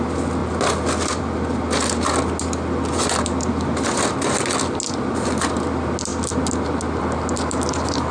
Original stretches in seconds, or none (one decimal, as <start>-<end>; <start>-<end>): 0.0-8.1